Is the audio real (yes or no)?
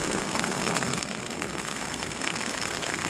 no